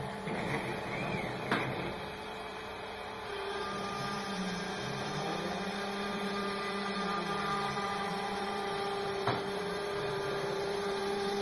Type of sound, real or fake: fake